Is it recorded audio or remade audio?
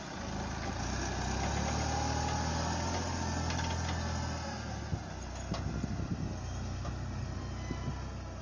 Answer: recorded